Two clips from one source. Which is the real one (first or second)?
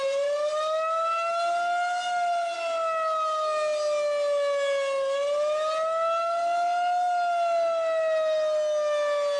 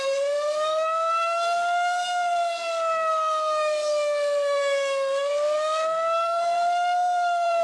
first